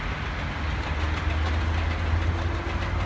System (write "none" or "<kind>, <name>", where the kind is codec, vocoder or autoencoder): none